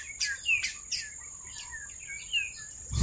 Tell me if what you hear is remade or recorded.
recorded